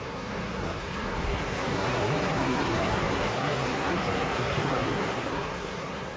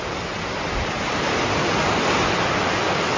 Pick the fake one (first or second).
first